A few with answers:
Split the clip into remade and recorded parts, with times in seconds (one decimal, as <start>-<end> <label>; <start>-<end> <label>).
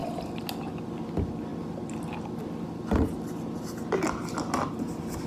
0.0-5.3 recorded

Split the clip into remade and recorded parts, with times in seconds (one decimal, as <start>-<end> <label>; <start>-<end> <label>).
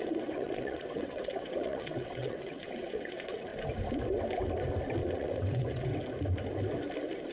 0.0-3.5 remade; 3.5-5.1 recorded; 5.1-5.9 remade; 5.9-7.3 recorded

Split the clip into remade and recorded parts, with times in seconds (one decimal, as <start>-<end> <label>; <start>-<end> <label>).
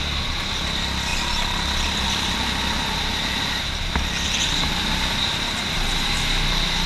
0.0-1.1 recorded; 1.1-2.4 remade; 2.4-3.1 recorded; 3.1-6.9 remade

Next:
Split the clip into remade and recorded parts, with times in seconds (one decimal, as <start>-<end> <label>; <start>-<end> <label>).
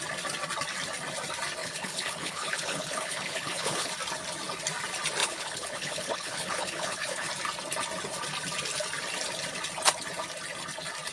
0.0-1.6 recorded; 1.6-3.9 remade; 3.9-5.2 recorded; 5.2-7.3 remade; 7.3-11.1 recorded